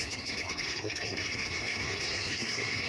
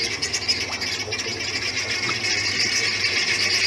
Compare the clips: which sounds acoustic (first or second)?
second